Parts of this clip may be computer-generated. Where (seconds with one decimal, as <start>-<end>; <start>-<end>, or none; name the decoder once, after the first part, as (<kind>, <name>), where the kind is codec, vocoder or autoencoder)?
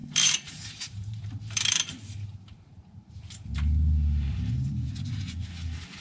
0.0-3.1 (vocoder, BigVGAN v2)